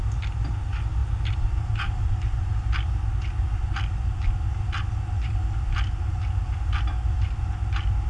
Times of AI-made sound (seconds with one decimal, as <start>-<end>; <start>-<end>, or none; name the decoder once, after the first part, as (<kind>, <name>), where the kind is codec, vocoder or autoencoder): none